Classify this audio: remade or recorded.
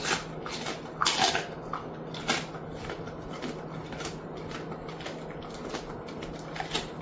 recorded